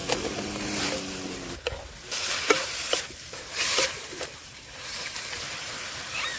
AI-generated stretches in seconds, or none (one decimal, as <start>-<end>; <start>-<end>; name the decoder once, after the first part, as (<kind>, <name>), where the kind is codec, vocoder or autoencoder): 2.3-6.4 (vocoder, BigVGAN v2)